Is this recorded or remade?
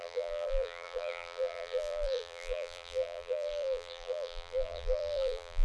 remade